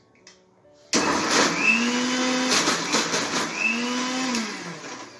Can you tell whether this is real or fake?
real